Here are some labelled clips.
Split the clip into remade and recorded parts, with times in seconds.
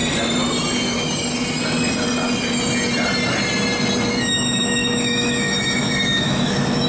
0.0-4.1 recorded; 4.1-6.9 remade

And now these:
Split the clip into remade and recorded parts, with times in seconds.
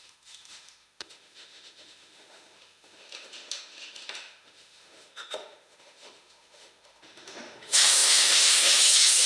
0.0-9.3 remade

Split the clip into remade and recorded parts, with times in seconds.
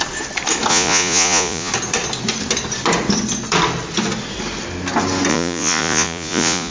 0.0-0.7 recorded; 0.7-1.7 remade; 1.7-5.3 recorded; 5.3-6.7 remade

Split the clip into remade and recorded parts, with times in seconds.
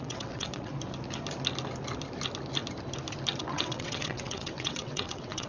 0.0-0.7 remade; 0.7-3.4 recorded; 3.4-5.5 remade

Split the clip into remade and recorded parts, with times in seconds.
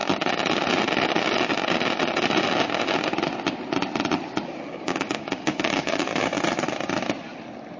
0.0-4.7 recorded; 4.7-6.1 remade; 6.1-7.8 recorded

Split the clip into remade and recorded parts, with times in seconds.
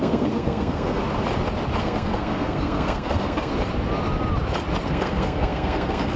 0.0-1.0 remade; 1.0-1.8 recorded; 1.8-3.5 remade; 3.5-4.9 recorded; 4.9-6.2 remade